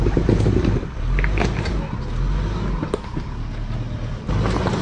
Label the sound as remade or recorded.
recorded